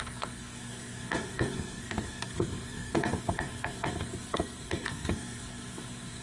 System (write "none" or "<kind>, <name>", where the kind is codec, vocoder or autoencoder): codec, SNAC